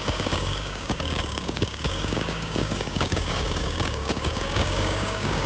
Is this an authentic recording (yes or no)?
no